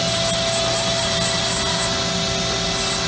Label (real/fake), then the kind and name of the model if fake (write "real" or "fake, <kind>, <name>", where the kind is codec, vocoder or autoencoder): real